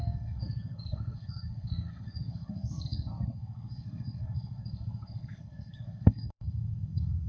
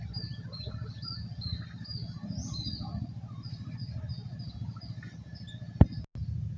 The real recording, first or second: second